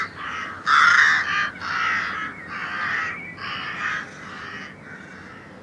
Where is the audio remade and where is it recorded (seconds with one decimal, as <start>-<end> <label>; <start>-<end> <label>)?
0.0-5.6 recorded